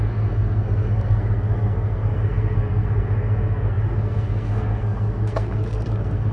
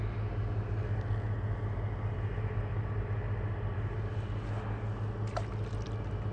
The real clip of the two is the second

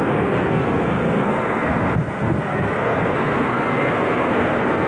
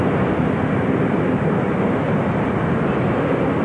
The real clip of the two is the second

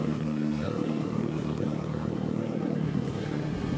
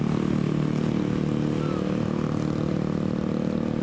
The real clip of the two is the second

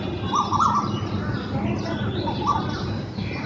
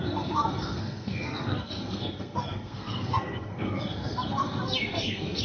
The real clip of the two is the first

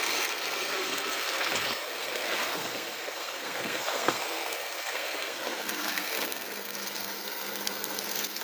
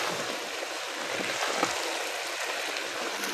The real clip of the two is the second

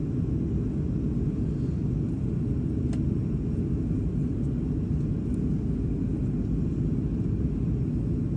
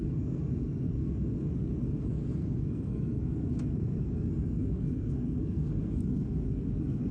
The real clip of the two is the first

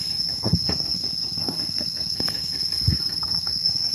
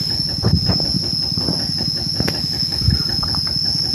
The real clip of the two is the second